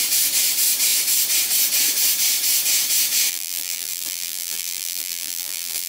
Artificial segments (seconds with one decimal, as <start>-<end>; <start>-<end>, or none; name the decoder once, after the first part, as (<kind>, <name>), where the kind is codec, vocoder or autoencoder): 3.3-5.9 (vocoder, BigVGAN v2)